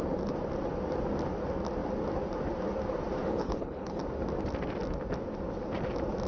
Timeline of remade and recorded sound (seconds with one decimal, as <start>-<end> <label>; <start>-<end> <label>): 0.0-3.2 recorded; 3.2-4.0 remade; 4.0-6.3 recorded